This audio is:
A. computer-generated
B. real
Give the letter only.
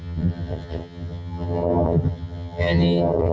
A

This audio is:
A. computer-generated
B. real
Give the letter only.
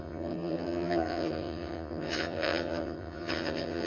A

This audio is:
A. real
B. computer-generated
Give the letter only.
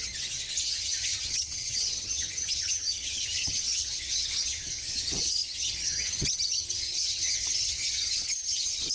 B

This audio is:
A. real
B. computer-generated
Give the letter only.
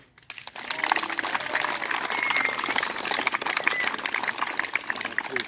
A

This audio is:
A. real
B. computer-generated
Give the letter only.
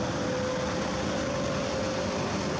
A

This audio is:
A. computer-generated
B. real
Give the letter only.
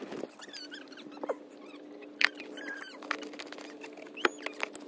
B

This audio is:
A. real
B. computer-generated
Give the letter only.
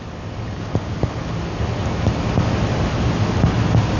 A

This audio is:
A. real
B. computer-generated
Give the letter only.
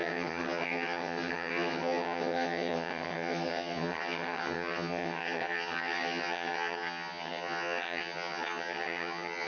B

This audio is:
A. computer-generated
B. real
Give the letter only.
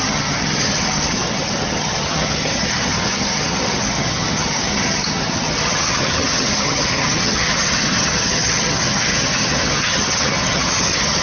A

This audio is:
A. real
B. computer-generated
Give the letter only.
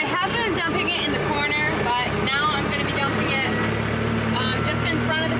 A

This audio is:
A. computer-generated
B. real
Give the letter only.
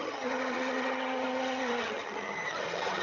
A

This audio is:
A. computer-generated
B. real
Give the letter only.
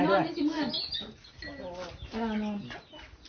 B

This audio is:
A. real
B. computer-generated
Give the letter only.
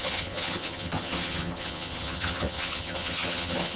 B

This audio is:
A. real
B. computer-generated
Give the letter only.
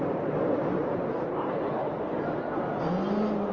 A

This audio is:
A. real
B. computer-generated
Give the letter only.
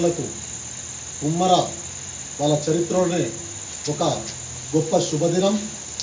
A